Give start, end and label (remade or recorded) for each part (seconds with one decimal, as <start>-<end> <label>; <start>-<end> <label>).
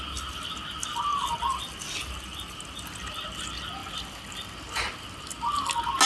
0.0-6.1 recorded